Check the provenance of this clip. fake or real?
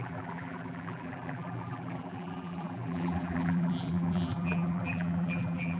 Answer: fake